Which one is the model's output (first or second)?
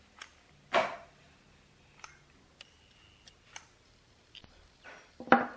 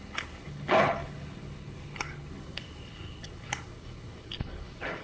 second